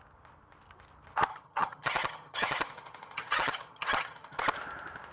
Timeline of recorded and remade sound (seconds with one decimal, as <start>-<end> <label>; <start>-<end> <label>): 0.0-1.3 recorded; 1.3-4.4 remade; 4.4-5.1 recorded